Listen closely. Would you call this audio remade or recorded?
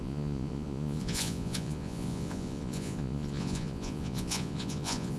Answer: remade